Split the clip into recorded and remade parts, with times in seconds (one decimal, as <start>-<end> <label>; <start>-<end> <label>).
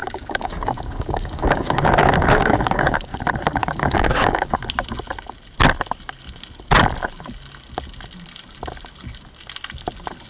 0.0-3.2 remade; 3.2-3.6 recorded; 3.6-4.6 remade; 4.6-10.3 recorded